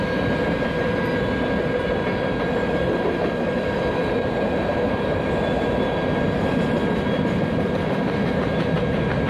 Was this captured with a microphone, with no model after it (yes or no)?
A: yes